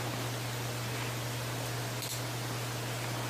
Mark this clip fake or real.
real